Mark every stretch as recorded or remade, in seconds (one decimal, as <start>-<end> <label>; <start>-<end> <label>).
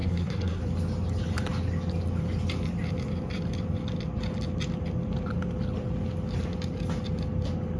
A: 0.0-0.6 remade; 0.6-7.8 recorded